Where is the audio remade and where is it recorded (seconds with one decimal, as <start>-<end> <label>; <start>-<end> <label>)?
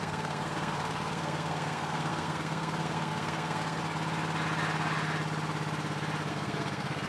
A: 0.0-3.8 remade; 3.8-6.3 recorded; 6.3-7.1 remade